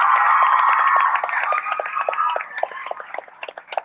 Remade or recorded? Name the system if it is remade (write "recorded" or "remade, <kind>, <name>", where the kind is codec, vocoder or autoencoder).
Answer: recorded